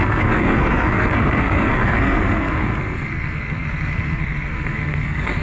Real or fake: fake